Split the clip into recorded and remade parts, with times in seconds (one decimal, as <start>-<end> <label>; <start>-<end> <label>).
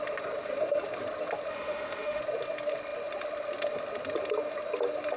0.0-1.5 recorded; 1.5-2.2 remade; 2.2-5.2 recorded